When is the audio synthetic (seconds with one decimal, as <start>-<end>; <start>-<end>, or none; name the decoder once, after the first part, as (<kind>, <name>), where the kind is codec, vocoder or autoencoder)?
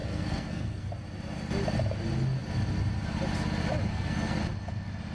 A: 0.0-0.9 (codec, SNAC); 3.9-4.4